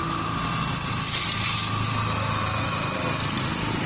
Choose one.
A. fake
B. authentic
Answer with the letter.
B